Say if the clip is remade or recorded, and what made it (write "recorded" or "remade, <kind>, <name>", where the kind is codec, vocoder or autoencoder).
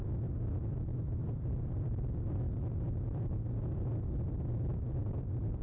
remade, vocoder, BigVGAN v2